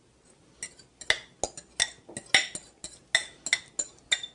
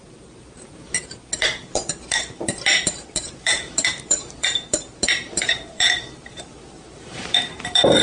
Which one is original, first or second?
first